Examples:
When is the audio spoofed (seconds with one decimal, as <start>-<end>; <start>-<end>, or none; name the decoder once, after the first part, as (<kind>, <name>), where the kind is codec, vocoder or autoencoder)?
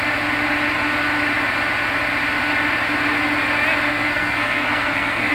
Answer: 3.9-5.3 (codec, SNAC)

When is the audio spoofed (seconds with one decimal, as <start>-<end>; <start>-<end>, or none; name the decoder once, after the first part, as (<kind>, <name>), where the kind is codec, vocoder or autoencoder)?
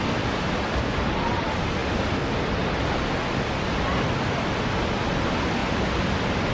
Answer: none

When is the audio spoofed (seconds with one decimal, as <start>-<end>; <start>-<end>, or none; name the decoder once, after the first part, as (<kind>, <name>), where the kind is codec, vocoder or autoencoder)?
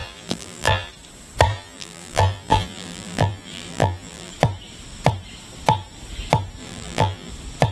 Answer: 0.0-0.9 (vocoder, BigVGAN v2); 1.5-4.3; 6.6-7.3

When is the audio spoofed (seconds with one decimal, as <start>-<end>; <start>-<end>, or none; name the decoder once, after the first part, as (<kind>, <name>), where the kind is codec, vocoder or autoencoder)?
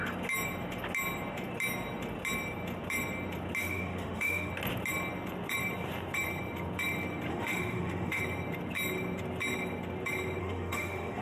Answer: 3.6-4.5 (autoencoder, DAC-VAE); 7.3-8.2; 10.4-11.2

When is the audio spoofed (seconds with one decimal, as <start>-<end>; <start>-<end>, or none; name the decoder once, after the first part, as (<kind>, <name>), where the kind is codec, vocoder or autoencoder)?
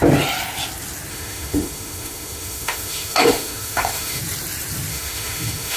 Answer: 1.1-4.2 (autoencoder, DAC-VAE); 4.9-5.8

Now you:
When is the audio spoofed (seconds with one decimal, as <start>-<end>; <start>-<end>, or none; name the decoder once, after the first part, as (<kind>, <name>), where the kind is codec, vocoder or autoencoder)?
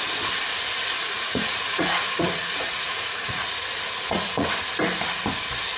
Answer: 1.0-4.5 (vocoder, Vocos)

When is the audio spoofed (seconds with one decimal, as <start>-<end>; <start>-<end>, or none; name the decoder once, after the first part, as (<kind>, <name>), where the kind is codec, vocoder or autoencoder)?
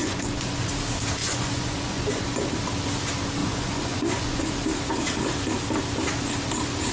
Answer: 0.0-0.7 (vocoder, Vocos); 1.2-2.3; 3.4-4.4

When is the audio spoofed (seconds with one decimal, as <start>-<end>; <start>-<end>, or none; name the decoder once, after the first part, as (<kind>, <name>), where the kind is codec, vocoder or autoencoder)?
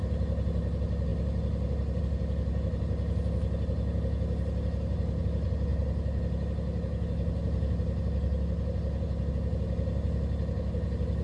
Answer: none